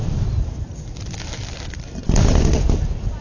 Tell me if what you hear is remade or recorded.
recorded